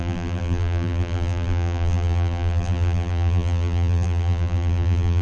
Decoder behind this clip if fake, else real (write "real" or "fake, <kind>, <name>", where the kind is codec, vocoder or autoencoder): fake, vocoder, BigVGAN v2